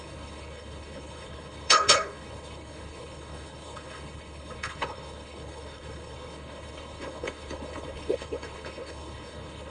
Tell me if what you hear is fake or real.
fake